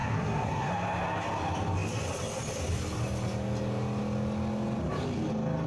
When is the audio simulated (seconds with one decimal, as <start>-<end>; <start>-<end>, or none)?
0.0-0.7